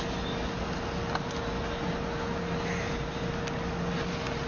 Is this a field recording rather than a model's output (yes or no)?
yes